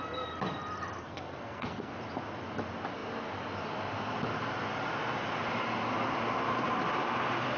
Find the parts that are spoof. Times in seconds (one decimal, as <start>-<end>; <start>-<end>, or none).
1.0-1.9